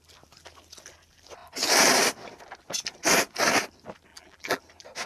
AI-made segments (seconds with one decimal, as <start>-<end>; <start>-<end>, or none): 4.1-4.6

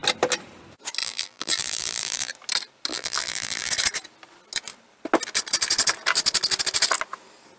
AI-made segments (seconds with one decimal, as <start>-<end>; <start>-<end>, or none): 1.0-2.3; 2.9-3.7

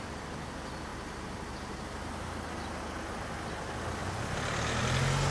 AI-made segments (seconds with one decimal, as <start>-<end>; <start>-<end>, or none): 0.9-2.1

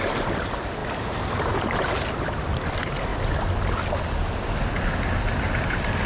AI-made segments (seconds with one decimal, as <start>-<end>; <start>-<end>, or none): 0.0-3.1; 5.1-6.1

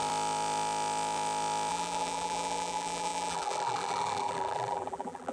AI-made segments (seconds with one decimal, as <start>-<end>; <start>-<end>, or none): 1.7-5.3

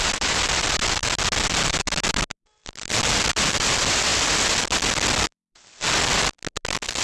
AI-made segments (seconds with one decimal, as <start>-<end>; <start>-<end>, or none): none

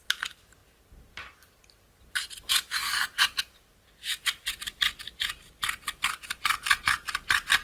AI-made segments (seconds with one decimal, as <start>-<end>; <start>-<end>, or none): none

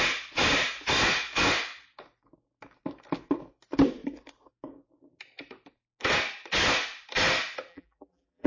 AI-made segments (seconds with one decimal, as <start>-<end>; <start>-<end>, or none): 7.7-8.5